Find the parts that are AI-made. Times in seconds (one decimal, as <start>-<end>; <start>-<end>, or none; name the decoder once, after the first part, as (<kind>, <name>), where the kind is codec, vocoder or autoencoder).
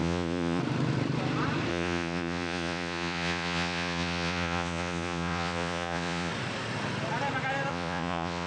0.0-0.6 (vocoder, Vocos); 1.7-6.3; 7.7-8.5